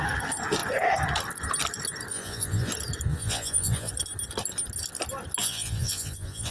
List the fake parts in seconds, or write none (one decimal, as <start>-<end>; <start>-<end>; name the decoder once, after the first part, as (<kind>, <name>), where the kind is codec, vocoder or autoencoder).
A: 2.1-2.7 (vocoder, Vocos); 3.1-3.9; 5.4-6.5

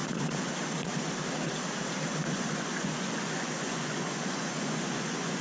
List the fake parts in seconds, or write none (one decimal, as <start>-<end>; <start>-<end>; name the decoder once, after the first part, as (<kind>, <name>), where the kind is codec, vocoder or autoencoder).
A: 2.1-5.4 (vocoder, Vocos)

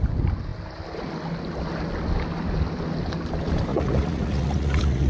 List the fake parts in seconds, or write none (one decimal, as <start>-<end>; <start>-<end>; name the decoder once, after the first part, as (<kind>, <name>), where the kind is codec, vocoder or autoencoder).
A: 3.7-5.1 (vocoder, Vocos)

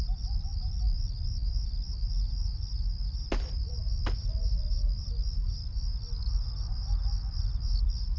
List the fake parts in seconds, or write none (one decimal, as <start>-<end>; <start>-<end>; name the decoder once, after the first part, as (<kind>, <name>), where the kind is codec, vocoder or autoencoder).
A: none